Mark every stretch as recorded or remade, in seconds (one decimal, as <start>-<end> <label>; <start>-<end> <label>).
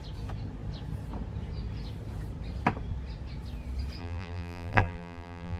0.0-4.0 recorded; 4.0-5.6 remade